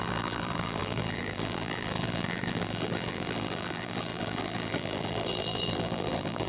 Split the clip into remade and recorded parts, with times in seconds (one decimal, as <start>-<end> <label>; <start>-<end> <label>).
0.0-6.5 remade

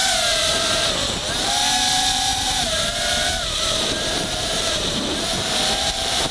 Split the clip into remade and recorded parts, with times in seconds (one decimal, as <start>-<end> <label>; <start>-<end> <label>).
0.0-6.3 remade